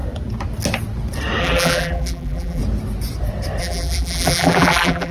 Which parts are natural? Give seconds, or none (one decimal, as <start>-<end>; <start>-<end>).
0.0-1.4; 2.6-3.6